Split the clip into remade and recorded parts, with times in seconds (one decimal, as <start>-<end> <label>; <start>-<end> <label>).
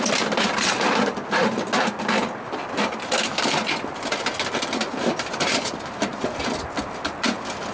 0.0-7.7 recorded